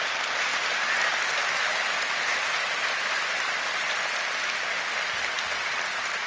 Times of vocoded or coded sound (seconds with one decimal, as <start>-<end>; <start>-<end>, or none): none